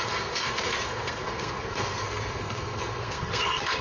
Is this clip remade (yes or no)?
yes